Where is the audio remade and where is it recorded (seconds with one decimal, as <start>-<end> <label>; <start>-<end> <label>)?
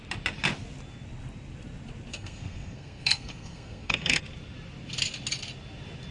0.0-2.1 recorded; 2.1-4.2 remade; 4.2-6.1 recorded